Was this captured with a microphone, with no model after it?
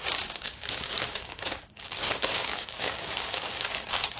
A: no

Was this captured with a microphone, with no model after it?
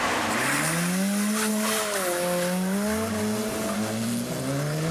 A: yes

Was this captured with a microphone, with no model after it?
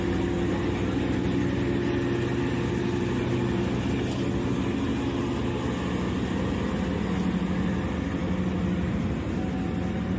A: yes